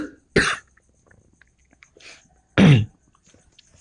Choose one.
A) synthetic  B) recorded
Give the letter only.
B